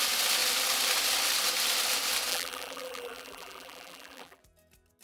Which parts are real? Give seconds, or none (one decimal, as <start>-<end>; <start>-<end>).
0.0-2.3; 4.4-5.0